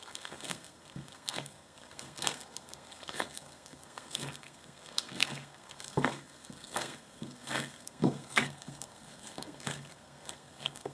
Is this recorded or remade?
remade